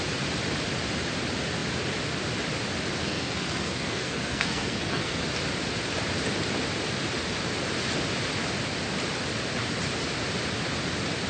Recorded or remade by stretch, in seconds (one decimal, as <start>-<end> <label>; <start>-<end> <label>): 0.0-3.0 recorded; 3.0-5.2 remade; 5.2-11.3 recorded